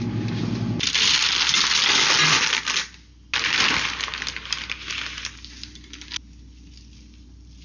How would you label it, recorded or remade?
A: recorded